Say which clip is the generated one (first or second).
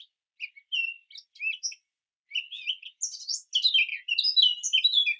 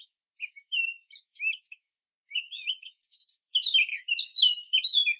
second